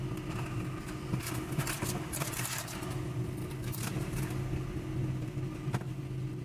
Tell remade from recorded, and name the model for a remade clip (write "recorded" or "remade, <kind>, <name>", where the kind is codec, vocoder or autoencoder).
recorded